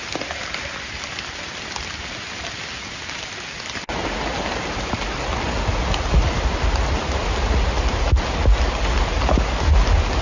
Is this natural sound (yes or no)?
yes